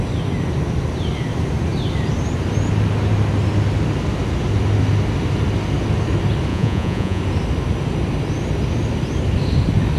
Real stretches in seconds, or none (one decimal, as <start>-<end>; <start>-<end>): 0.0-6.5; 7.2-10.0